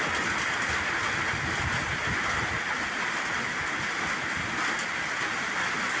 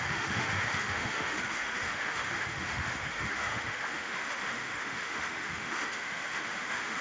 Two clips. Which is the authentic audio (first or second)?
first